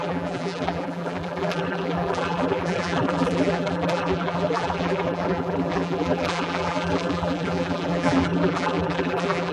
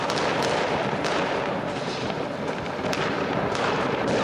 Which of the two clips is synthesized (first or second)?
first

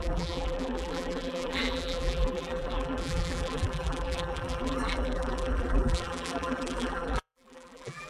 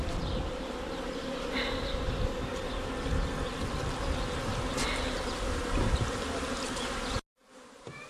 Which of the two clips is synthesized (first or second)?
first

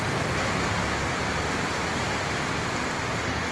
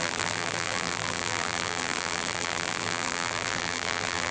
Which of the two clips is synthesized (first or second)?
second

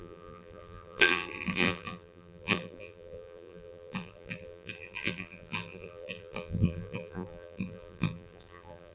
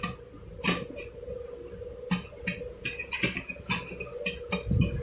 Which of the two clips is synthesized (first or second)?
first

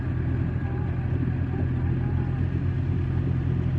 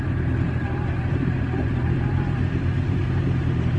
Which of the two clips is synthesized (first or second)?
second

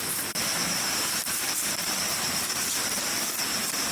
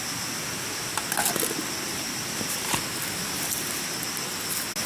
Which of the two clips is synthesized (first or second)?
first